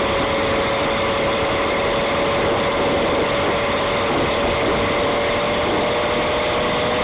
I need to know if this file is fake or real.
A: real